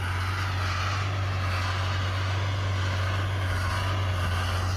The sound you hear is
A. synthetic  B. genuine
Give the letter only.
B